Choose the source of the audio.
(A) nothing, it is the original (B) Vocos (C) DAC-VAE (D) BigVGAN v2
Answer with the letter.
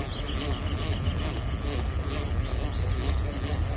A